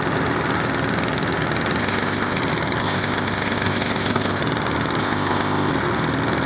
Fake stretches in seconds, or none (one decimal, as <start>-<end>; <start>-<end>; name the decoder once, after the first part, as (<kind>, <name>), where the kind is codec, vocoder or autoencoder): 1.8-2.4 (codec, ZipCodec); 2.8-4.4; 5.0-5.7